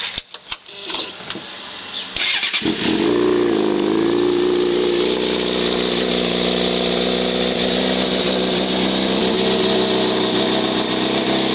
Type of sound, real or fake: real